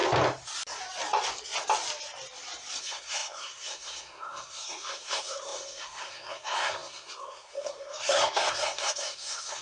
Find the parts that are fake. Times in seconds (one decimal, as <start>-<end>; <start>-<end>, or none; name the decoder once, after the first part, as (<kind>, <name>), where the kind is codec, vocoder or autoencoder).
2.8-9.6 (codec, SNAC)